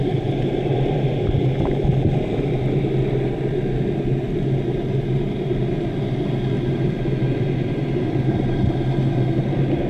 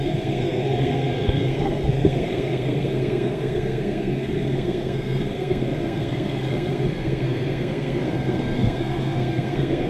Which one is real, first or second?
first